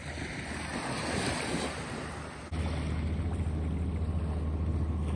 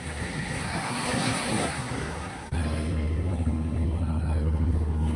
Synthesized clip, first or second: second